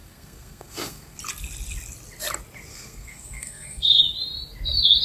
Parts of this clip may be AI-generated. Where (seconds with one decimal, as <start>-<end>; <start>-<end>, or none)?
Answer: 0.0-1.2; 2.7-4.0